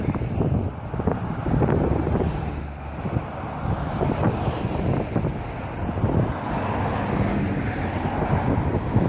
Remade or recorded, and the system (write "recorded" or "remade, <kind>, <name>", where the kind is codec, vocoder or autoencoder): recorded